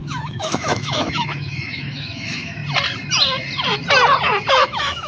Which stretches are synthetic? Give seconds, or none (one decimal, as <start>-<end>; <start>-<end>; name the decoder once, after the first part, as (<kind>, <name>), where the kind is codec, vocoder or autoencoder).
0.0-2.6 (autoencoder, DAC-VAE); 4.5-5.1